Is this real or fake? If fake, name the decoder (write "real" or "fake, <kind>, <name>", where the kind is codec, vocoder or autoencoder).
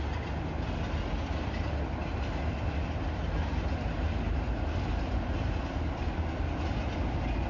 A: real